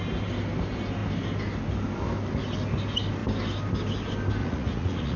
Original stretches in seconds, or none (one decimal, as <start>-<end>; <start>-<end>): 0.0-4.4